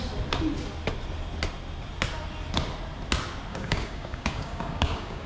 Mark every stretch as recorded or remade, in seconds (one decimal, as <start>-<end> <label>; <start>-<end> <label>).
0.0-3.5 recorded; 3.5-5.3 remade